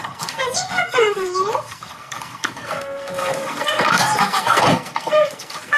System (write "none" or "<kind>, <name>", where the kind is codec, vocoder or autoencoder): codec, SNAC